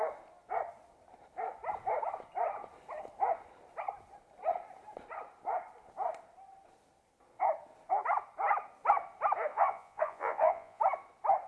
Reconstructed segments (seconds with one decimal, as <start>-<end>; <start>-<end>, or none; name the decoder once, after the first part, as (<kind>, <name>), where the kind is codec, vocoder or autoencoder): 9.5-10.8 (vocoder, Vocos)